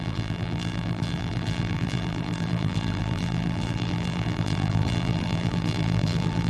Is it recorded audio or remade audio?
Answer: remade